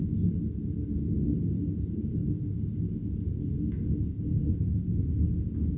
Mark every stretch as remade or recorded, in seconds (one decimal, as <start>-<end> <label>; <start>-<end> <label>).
0.0-5.8 recorded